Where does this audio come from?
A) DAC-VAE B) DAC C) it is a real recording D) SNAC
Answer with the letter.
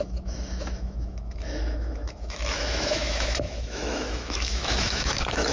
A